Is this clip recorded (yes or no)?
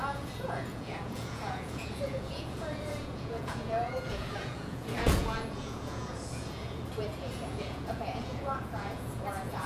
no